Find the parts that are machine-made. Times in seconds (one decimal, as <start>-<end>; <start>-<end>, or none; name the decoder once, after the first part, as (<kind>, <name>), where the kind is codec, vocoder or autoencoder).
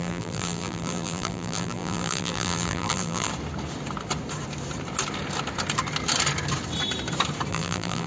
0.0-3.3 (vocoder, BigVGAN v2); 7.5-8.1